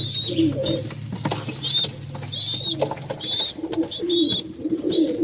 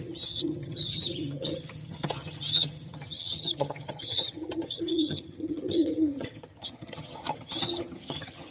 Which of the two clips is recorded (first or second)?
first